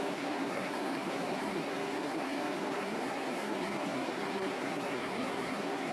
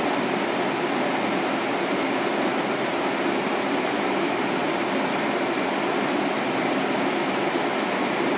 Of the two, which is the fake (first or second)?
first